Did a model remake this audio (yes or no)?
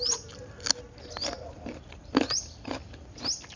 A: no